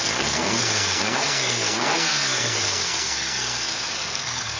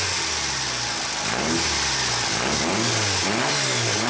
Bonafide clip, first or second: second